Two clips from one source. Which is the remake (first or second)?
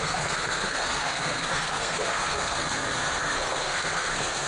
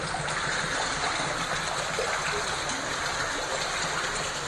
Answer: first